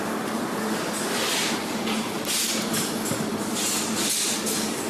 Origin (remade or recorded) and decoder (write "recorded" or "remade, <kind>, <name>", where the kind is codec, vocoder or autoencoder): recorded